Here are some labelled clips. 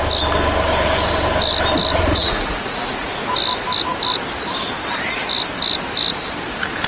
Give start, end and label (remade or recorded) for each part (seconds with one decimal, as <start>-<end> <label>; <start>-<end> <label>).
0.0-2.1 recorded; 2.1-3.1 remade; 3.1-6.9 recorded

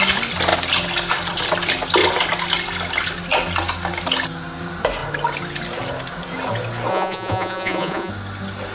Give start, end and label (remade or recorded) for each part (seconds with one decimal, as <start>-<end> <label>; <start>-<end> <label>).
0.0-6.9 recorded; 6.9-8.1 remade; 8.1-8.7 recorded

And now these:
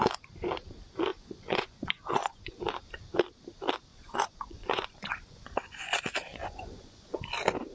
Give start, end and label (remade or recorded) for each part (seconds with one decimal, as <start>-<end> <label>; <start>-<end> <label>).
0.0-1.1 recorded; 1.1-2.8 remade; 2.8-3.9 recorded; 3.9-6.0 remade; 6.0-6.4 recorded; 6.4-7.2 remade; 7.2-7.7 recorded

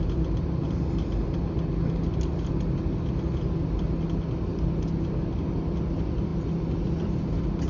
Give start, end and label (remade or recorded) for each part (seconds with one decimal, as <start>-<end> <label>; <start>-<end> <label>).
0.0-7.7 recorded